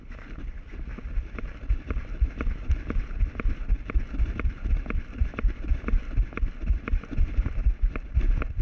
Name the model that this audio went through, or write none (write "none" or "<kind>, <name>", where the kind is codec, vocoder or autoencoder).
none